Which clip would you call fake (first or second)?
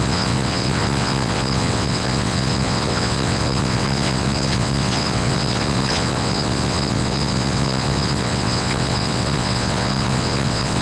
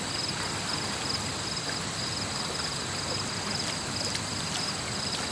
first